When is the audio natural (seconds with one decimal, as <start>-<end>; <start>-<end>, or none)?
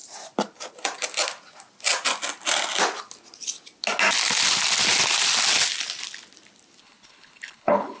0.0-6.8